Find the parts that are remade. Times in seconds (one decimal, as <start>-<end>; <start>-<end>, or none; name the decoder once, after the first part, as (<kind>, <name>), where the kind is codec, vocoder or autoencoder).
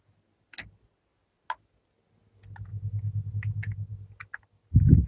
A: none